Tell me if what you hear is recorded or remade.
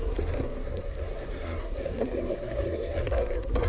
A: remade